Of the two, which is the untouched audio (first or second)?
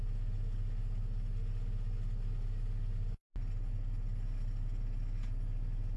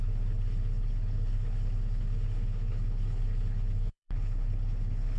first